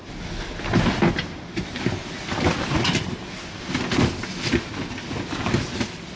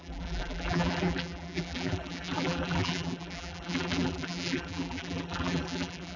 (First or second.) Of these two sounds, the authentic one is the first